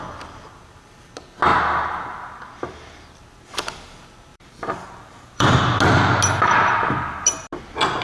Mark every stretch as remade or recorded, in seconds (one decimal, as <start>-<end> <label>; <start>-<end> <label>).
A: 0.0-4.3 recorded; 4.3-5.6 remade; 5.6-8.0 recorded